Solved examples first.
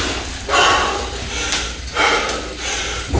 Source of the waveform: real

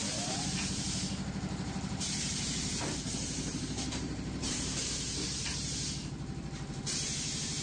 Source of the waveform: fake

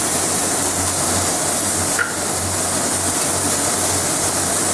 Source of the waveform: real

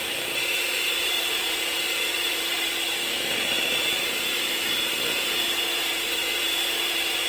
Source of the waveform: fake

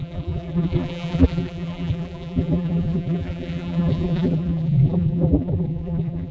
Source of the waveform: fake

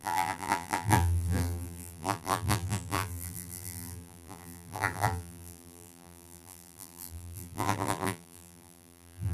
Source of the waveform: fake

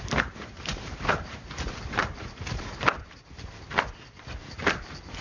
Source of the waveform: fake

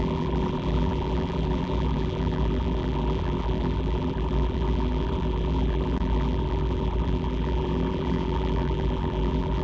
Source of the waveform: fake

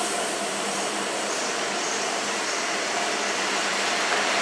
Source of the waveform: fake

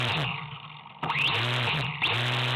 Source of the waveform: real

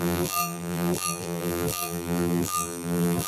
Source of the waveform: fake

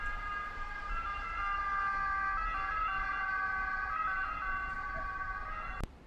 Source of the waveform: real